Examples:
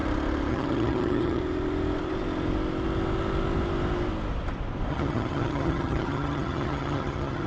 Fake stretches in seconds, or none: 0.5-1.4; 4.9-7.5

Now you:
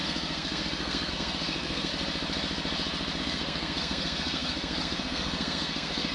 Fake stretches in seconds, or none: 0.0-1.9; 3.2-6.1

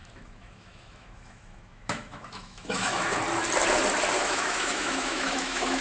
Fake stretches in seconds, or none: 0.0-3.2; 4.2-5.8

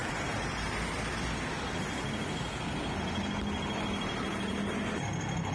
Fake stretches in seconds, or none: none